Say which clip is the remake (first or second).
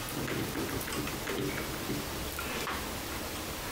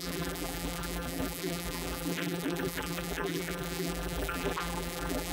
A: second